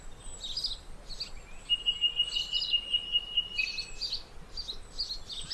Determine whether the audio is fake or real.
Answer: real